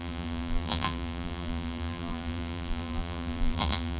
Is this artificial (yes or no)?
yes